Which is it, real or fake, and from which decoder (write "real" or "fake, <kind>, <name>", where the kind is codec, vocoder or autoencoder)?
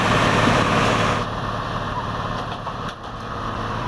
fake, vocoder, BigVGAN v2